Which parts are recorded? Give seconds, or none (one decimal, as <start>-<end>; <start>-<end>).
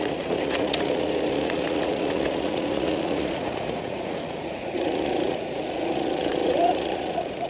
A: none